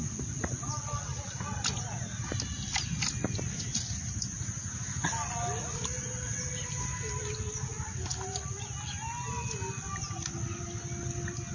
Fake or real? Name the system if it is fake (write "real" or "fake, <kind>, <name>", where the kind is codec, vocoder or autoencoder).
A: real